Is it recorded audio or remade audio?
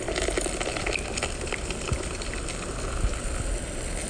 recorded